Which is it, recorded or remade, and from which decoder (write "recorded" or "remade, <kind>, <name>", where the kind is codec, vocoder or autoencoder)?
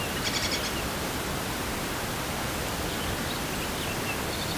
recorded